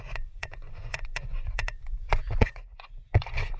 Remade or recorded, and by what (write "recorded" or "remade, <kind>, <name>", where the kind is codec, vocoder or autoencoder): remade, vocoder, Vocos